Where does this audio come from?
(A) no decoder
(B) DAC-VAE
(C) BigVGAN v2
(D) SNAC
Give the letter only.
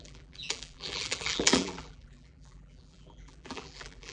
C